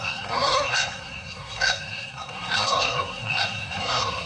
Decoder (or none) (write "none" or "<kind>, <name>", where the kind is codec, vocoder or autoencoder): codec, SNAC